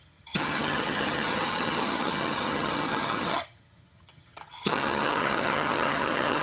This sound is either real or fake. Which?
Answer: fake